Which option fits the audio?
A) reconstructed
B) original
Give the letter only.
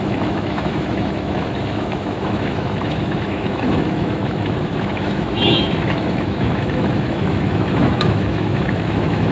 A